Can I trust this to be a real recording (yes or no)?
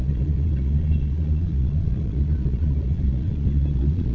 no